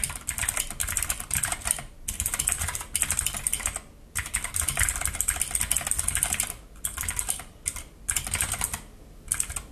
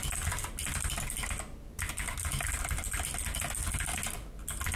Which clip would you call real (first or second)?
second